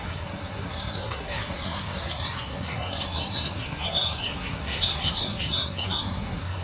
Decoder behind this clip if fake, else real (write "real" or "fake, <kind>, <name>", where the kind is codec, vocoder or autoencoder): fake, codec, SNAC